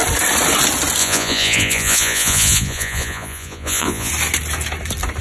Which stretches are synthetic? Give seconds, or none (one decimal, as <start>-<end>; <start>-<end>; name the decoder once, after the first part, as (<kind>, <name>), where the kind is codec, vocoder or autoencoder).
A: 1.0-4.1 (vocoder, Vocos)